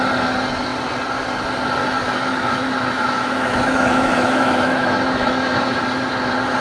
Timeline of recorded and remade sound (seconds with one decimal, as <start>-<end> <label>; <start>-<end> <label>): 0.0-1.8 recorded; 1.8-5.8 remade; 5.8-6.6 recorded

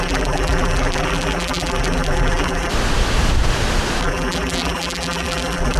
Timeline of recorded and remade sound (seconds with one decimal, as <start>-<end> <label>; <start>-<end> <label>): 0.0-2.7 remade; 2.7-4.0 recorded; 4.0-5.8 remade